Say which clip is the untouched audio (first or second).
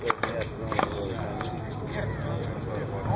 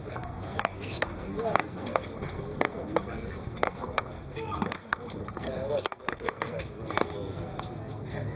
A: first